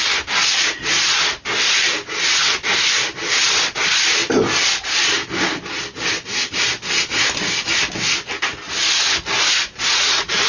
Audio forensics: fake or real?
real